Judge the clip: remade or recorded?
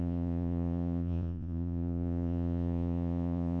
remade